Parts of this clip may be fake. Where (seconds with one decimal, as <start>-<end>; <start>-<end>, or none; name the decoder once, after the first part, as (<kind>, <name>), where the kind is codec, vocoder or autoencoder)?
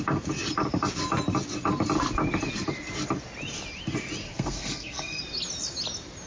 4.2-5.2 (codec, SNAC)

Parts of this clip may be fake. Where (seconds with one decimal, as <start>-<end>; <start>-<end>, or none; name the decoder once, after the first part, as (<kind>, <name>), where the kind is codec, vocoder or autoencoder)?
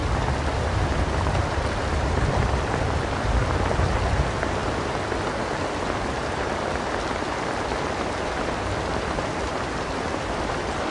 0.0-4.6 (vocoder, BigVGAN v2); 6.3-10.9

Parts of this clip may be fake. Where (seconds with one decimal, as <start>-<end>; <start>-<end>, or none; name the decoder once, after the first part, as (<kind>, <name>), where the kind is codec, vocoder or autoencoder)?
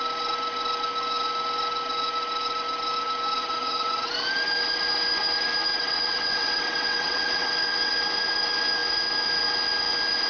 3.4-4.1 (vocoder, WaveNeXt); 5.7-8.0